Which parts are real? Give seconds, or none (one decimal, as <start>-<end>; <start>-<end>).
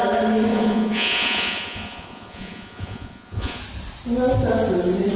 0.0-0.5; 3.6-5.2